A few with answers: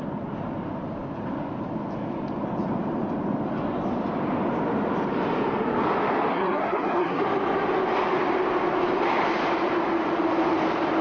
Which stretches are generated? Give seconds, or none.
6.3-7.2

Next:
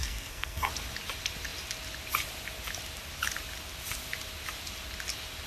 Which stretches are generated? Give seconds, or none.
0.0-0.7

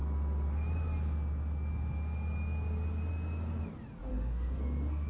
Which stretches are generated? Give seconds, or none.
4.1-5.1